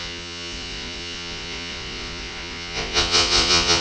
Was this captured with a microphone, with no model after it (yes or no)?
no